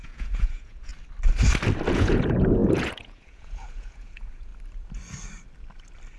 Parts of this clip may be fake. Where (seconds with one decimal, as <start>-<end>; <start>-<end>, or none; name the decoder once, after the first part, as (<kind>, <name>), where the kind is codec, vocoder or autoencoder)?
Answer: 0.0-0.9 (vocoder, Vocos); 1.9-4.5